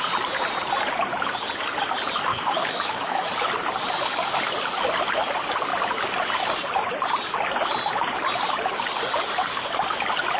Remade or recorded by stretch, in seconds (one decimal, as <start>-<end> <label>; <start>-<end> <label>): 0.0-2.3 recorded; 2.3-3.3 remade; 3.3-10.4 recorded